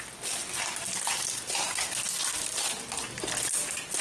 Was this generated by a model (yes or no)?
no